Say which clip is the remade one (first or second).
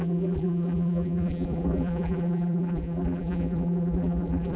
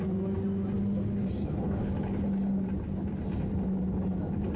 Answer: first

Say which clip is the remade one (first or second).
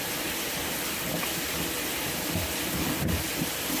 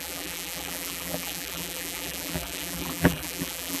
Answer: second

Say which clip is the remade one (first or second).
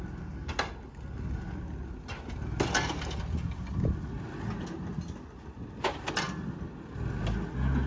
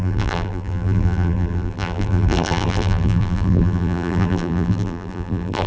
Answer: second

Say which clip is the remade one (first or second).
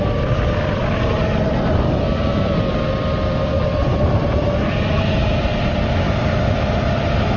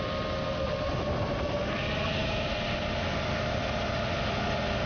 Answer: first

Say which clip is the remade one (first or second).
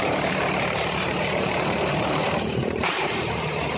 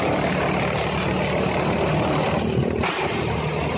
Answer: first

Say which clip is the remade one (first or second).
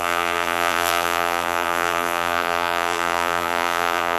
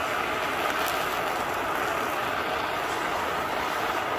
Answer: first